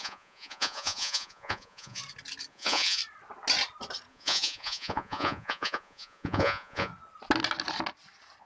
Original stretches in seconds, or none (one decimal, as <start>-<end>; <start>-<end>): 2.0-2.5; 3.0-4.1; 6.9-8.4